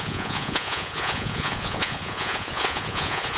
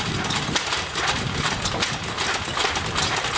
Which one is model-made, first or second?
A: first